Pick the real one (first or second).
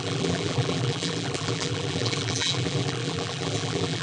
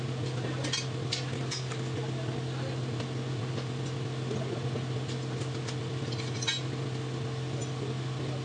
second